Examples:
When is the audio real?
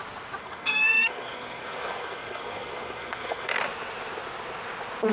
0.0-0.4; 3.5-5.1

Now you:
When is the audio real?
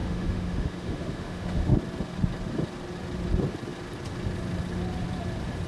1.8-5.7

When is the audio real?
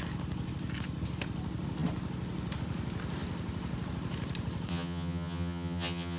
0.0-4.7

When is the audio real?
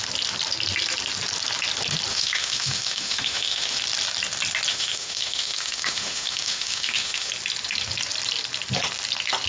0.0-2.1; 3.8-4.7; 7.3-9.5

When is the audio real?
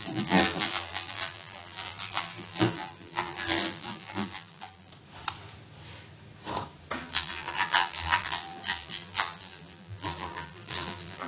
4.9-7.0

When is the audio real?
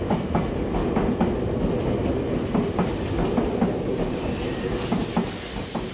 0.8-3.8; 5.0-5.9